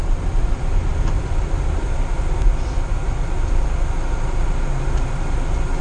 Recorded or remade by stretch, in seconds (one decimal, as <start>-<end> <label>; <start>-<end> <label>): 0.0-5.8 recorded